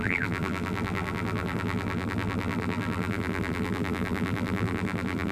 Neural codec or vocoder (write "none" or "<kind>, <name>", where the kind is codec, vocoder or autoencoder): vocoder, BigVGAN v2